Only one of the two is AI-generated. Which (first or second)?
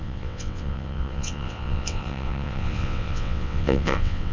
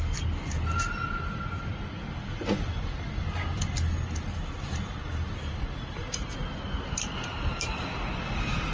first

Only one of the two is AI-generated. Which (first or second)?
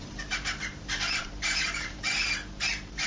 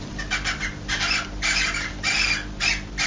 first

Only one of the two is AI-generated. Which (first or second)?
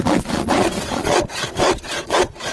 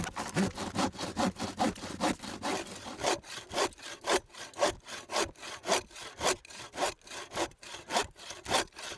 first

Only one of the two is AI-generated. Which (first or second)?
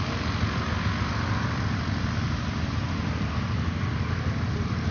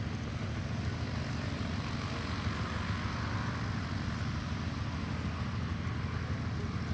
first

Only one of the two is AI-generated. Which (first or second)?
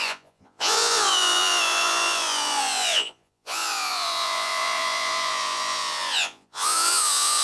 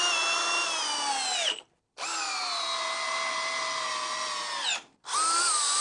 first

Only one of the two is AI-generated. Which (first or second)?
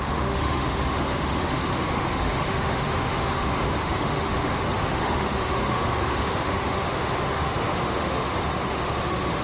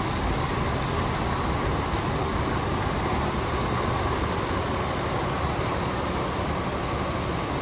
first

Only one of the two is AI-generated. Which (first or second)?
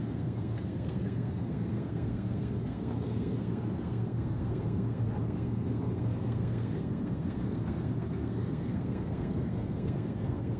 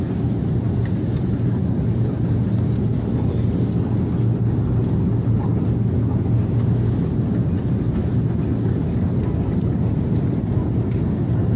first